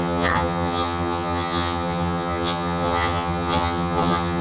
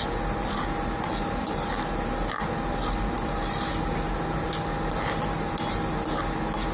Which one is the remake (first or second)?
first